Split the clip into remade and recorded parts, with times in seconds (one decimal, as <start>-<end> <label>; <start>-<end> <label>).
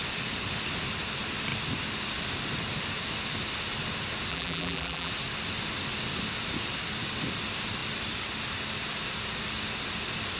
0.0-4.3 recorded; 4.3-5.1 remade; 5.1-10.4 recorded